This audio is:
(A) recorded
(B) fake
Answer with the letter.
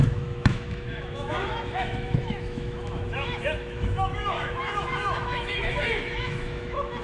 B